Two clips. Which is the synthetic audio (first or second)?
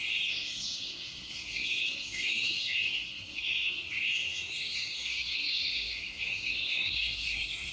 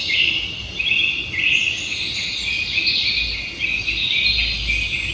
first